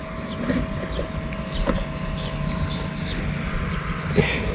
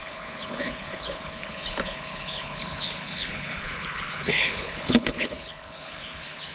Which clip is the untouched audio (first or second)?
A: first